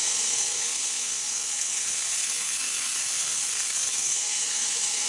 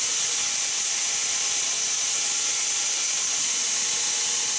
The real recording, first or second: second